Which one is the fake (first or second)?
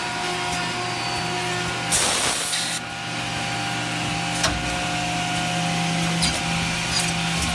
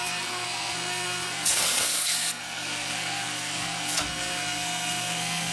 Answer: second